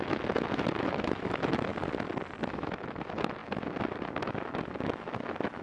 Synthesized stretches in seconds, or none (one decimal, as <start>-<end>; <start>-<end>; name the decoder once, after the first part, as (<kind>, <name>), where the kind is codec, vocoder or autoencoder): 0.0-1.7 (autoencoder, DAC-VAE); 2.5-5.6